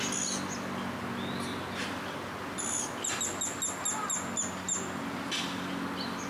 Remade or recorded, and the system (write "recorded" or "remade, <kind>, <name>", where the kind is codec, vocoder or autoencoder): recorded